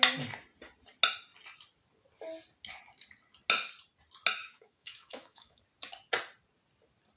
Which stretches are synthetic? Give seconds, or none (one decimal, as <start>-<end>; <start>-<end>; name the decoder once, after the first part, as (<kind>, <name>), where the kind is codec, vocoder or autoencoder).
4.4-5.6 (autoencoder, DAC-VAE)